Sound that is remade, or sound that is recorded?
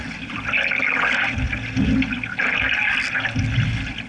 recorded